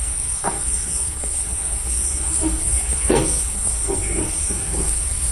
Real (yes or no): no